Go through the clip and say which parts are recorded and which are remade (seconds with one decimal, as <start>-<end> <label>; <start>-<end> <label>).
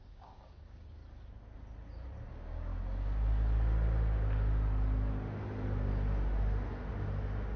0.0-1.0 remade; 1.0-2.3 recorded; 2.3-2.7 remade; 2.7-7.6 recorded